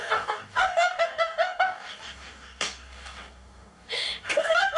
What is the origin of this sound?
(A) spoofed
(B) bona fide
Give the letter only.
A